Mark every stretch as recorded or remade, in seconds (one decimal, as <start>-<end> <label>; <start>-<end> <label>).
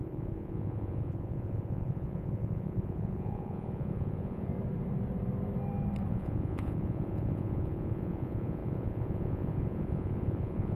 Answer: 0.0-4.5 remade; 4.5-6.1 recorded; 6.1-10.7 remade